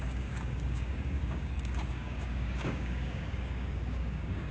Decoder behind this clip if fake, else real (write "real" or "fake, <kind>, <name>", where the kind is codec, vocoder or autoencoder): fake, codec, DAC